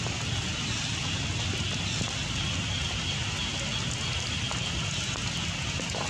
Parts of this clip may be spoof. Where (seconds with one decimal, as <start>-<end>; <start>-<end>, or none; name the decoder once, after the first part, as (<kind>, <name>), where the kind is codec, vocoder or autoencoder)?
none